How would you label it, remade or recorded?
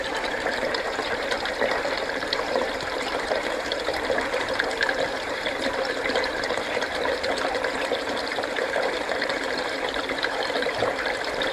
remade